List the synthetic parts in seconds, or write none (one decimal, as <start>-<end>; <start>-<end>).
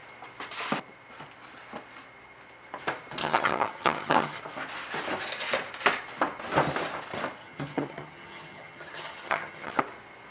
3.2-4.4; 7.4-9.8